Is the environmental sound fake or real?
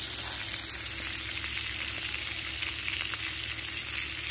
real